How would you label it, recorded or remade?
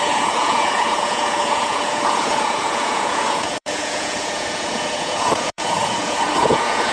remade